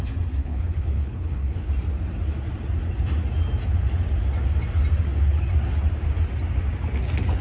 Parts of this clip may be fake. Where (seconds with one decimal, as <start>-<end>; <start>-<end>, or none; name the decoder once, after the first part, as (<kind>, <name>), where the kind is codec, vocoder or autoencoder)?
0.4-1.7 (codec, HILCodec)